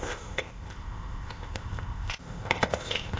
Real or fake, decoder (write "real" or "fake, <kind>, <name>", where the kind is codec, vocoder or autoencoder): fake, codec, ZipCodec